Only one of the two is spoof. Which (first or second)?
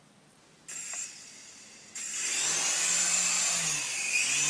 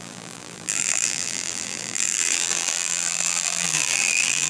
second